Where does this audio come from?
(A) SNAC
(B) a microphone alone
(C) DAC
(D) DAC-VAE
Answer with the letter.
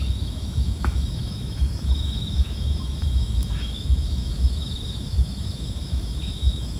D